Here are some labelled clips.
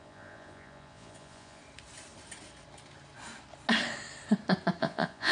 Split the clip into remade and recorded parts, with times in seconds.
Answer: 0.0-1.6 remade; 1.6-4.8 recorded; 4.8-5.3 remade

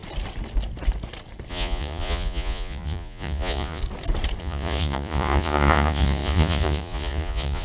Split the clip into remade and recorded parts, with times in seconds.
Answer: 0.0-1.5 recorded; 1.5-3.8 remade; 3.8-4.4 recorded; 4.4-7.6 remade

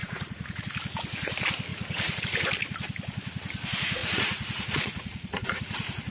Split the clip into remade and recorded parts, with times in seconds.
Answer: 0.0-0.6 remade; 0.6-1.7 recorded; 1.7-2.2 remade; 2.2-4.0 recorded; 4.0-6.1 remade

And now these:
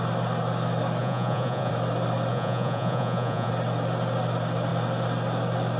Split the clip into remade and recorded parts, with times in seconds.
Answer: 0.0-1.0 recorded; 1.0-1.7 remade; 1.7-2.3 recorded; 2.3-3.5 remade; 3.5-5.8 recorded

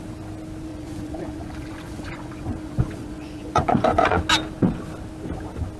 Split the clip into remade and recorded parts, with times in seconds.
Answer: 0.0-0.7 recorded; 0.7-4.2 remade; 4.2-5.8 recorded